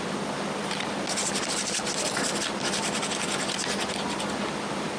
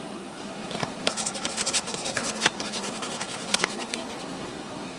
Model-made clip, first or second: second